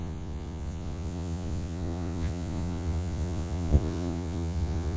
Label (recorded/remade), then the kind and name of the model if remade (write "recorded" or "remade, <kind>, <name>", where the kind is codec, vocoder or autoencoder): remade, vocoder, Vocos